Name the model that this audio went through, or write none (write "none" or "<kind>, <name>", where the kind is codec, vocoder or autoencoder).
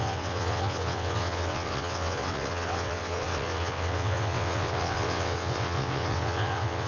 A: vocoder, WaveNeXt